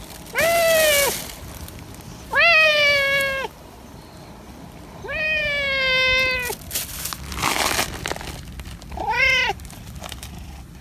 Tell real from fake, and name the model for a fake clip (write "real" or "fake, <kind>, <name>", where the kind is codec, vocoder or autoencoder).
real